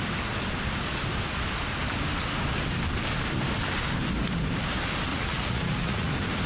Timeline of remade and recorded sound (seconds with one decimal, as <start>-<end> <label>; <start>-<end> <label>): 0.0-5.1 recorded; 5.1-6.1 remade; 6.1-6.5 recorded